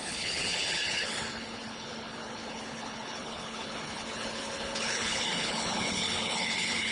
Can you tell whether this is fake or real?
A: fake